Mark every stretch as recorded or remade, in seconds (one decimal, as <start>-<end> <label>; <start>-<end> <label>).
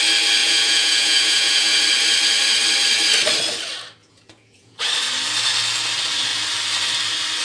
0.0-0.4 recorded; 0.4-1.8 remade; 1.8-4.0 recorded; 4.0-4.9 remade; 4.9-7.4 recorded